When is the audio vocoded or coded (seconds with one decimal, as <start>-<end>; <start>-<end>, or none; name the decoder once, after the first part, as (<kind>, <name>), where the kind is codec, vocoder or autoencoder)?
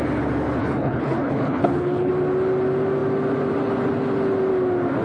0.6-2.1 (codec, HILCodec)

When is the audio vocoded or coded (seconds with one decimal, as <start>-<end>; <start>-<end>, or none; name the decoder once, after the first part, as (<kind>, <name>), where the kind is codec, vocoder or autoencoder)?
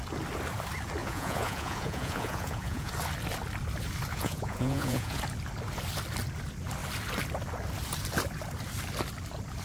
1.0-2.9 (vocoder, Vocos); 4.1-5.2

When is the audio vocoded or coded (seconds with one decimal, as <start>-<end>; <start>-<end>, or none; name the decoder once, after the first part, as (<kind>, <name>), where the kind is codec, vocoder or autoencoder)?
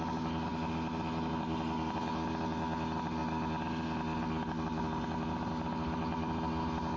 none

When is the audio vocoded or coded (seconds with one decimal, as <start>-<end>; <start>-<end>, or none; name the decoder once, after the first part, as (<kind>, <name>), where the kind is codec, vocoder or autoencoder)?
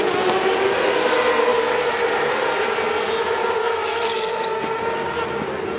3.6-4.8 (codec, SNAC)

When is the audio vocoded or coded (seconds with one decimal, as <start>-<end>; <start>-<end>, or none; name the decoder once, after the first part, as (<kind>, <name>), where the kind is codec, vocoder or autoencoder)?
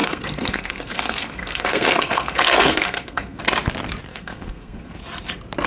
0.0-3.4 (codec, SNAC); 4.1-5.0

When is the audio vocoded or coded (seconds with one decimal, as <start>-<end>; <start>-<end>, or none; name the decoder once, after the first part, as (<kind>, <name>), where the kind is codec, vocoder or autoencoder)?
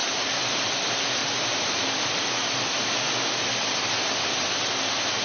0.0-0.5 (vocoder, BigVGAN v2)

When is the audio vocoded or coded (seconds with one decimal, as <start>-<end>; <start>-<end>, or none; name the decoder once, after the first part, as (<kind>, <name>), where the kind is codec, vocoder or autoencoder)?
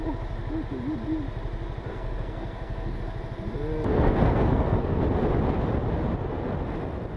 1.9-3.0 (codec, SNAC); 3.9-5.0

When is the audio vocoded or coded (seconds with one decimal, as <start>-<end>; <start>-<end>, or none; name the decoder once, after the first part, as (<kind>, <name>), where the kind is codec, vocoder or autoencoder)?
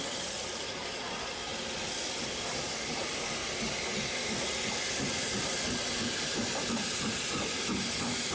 none